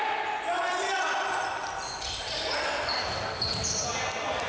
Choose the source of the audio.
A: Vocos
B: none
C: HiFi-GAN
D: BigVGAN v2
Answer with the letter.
B